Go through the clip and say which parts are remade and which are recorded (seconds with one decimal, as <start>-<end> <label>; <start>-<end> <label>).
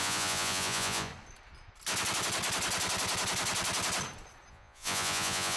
0.0-1.1 remade; 1.1-4.5 recorded; 4.5-5.6 remade